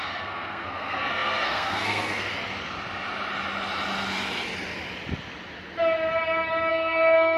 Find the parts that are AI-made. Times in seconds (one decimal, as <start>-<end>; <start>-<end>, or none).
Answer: 0.0-2.3; 6.7-7.4